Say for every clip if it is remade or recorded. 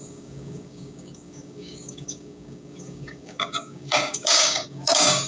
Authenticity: remade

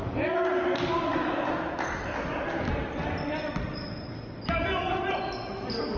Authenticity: recorded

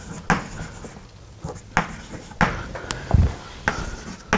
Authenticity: recorded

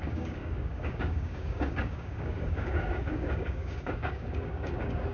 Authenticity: remade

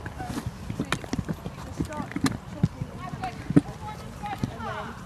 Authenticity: recorded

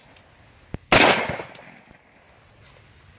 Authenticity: recorded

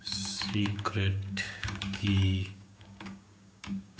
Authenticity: remade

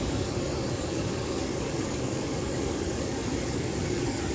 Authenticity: remade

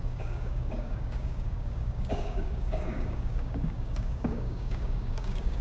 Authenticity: remade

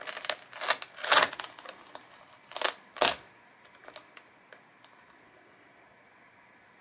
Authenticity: recorded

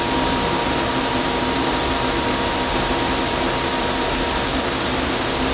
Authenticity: recorded